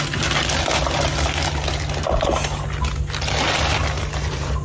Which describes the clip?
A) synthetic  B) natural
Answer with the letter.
B